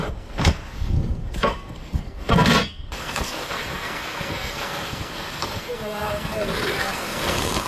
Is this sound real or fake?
fake